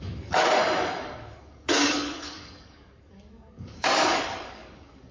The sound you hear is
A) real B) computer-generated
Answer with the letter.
B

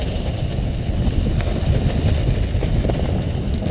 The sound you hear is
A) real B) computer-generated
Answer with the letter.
A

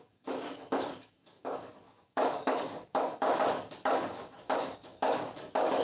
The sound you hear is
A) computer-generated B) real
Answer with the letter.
A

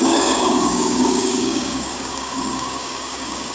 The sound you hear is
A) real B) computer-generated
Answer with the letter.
B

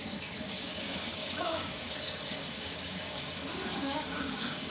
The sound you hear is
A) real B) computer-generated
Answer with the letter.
B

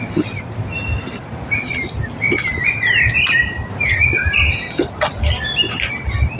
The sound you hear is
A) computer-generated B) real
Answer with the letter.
B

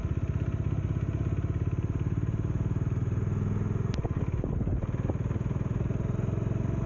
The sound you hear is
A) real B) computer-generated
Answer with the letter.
A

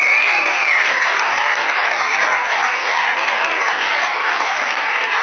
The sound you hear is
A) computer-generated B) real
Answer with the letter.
A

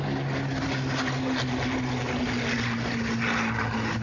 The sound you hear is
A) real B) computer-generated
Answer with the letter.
A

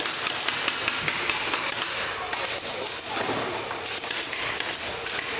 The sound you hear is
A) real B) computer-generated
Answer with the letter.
A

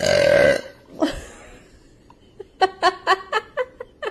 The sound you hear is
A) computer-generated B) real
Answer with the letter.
B